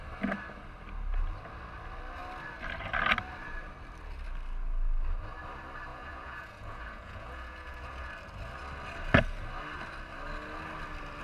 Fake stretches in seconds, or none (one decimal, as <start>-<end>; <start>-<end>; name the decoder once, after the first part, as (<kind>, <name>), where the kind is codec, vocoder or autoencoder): 5.9-8.1 (vocoder, Vocos)